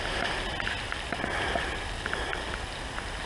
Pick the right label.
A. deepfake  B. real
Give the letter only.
B